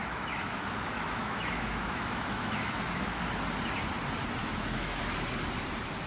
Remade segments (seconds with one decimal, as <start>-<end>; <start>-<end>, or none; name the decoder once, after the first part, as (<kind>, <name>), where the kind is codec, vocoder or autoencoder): 0.0-3.2 (autoencoder, DAC-VAE); 4.4-5.0